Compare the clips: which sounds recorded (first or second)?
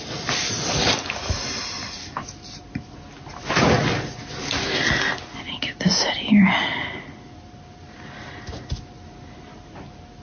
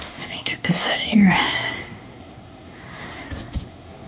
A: first